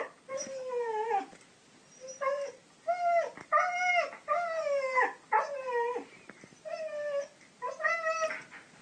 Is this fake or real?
real